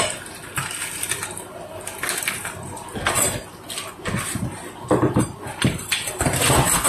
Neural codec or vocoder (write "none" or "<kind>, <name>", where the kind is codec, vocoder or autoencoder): none